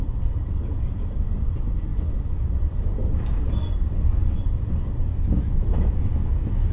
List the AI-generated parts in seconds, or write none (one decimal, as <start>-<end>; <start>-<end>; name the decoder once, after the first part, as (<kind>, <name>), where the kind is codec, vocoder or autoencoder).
none